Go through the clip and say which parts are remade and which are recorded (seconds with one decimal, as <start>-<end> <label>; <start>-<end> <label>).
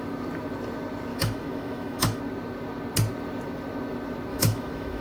0.0-1.1 recorded; 1.1-2.2 remade; 2.2-4.3 recorded; 4.3-5.0 remade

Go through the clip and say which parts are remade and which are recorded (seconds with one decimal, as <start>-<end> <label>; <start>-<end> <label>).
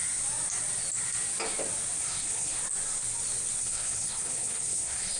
0.0-2.0 recorded; 2.0-2.6 remade; 2.6-3.6 recorded; 3.6-5.2 remade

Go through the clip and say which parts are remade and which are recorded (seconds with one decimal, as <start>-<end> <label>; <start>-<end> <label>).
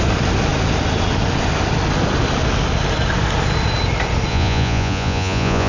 0.0-4.3 recorded; 4.3-5.7 remade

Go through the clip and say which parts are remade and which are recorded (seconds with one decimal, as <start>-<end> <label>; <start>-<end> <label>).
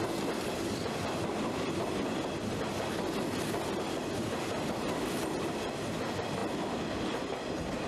0.0-7.9 recorded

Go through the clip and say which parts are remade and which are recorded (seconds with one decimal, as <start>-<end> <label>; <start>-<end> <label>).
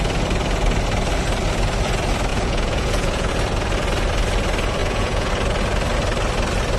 0.0-2.3 recorded; 2.3-3.3 remade; 3.3-4.8 recorded; 4.8-5.3 remade; 5.3-6.8 recorded